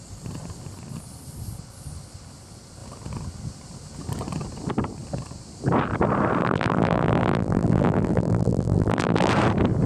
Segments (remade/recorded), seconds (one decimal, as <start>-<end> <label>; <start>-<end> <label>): 0.0-6.4 recorded; 6.4-9.3 remade; 9.3-9.9 recorded

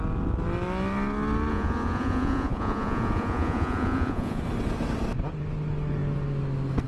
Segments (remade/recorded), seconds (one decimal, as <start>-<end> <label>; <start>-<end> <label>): 0.0-1.5 recorded; 1.5-4.4 remade; 4.4-6.9 recorded

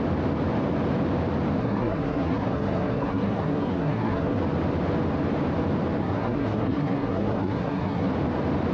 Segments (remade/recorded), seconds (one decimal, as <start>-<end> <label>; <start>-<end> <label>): 0.0-1.6 recorded; 1.6-4.4 remade; 4.4-6.0 recorded; 6.0-8.1 remade; 8.1-8.7 recorded

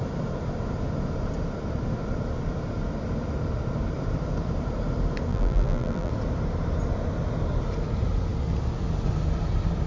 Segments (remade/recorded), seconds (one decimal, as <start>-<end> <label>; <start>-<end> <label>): 0.0-5.3 recorded; 5.3-6.1 remade; 6.1-9.9 recorded